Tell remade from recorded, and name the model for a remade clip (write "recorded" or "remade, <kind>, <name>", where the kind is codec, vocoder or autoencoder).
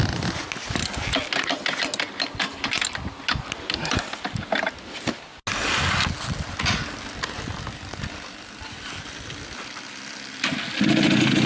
recorded